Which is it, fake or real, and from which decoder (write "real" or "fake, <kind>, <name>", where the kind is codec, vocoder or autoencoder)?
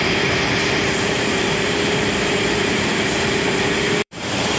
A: fake, vocoder, BigVGAN v2